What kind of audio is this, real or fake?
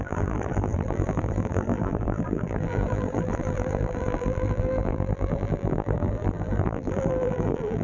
fake